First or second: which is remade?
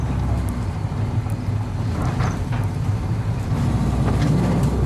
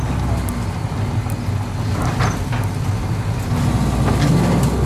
first